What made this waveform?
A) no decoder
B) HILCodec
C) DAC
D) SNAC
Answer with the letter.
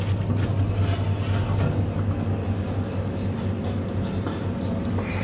A